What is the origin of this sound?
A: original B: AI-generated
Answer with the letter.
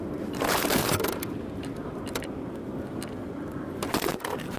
A